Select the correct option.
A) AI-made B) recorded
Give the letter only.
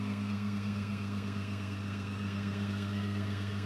A